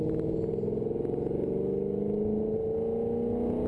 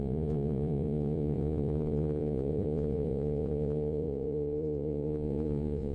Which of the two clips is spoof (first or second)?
second